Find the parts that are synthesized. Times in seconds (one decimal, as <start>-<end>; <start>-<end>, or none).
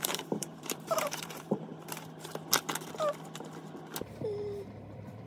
0.0-1.7; 4.0-5.3